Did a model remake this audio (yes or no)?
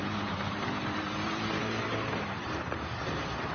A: yes